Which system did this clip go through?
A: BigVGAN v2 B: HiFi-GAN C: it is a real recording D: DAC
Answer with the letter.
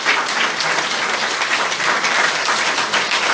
C